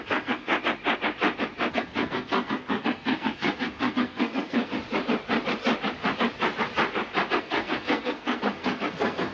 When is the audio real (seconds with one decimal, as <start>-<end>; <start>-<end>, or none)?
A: 0.5-1.7; 4.7-7.4